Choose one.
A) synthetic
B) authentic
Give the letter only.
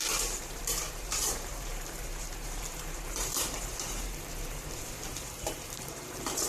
A